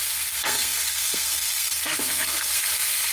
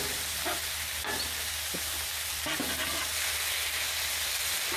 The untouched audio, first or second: second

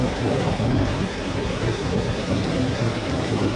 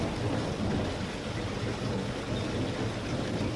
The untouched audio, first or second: second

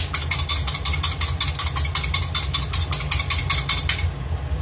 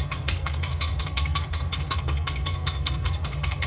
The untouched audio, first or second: first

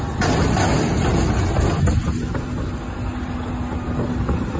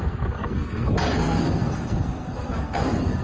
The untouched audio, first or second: first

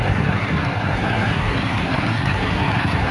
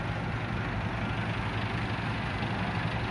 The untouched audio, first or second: second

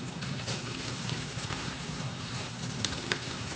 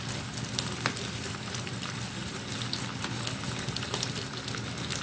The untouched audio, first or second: second